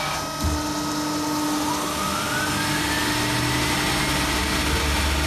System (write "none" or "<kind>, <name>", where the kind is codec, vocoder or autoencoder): none